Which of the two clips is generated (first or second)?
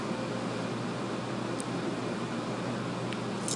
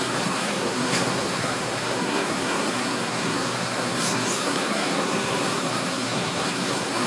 second